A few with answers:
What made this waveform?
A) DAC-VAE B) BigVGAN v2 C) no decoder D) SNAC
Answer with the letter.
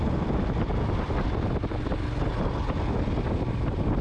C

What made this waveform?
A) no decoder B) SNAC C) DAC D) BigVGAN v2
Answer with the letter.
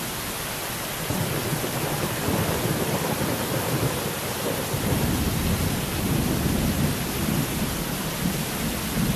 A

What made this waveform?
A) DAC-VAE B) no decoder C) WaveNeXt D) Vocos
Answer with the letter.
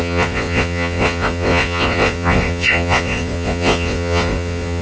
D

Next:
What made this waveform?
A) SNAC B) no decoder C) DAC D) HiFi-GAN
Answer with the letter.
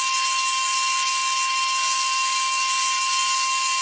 C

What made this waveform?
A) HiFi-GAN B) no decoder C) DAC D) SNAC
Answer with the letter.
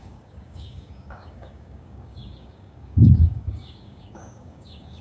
C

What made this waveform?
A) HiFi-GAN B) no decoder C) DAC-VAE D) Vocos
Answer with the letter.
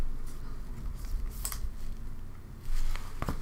B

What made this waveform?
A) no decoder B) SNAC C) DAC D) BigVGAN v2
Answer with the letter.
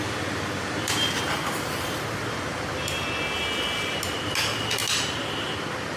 A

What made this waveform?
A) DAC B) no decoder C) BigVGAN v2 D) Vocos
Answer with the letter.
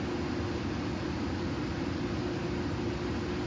B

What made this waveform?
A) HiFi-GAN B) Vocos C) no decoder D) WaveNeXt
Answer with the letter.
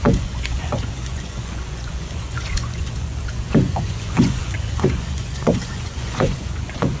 B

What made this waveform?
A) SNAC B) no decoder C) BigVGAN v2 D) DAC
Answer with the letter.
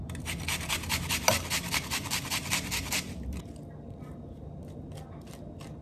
B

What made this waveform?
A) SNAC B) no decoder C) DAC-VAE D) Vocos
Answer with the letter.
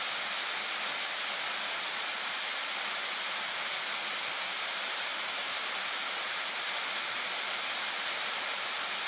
B